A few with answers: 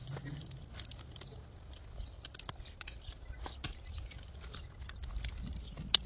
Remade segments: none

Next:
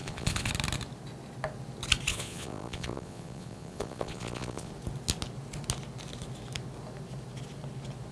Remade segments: 0.0-0.5 (vocoder, Vocos); 2.1-4.7

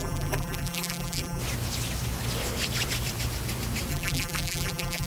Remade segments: 0.0-1.4 (vocoder, BigVGAN v2); 3.9-5.1

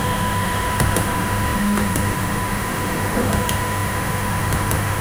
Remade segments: 0.0-5.0 (autoencoder, DAC-VAE)